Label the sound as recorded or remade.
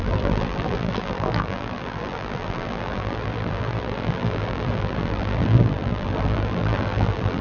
remade